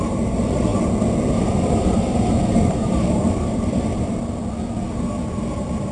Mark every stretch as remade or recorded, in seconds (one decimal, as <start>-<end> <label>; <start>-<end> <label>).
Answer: 0.0-0.7 remade; 0.7-1.3 recorded; 1.3-3.9 remade; 3.9-5.9 recorded